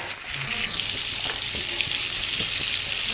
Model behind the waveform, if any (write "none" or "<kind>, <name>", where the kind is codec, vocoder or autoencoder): none